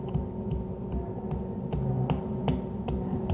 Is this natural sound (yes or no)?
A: yes